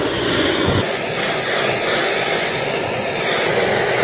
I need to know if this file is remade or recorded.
remade